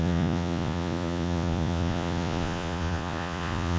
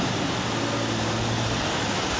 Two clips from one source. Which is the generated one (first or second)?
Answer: first